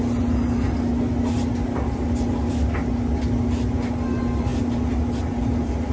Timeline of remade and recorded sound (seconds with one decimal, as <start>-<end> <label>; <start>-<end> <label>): 0.0-5.9 recorded